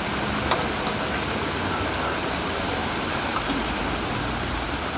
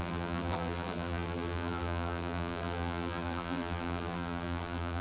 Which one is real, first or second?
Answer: first